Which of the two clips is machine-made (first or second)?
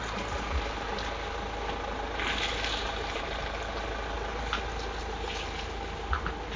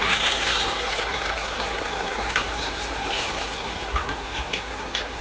second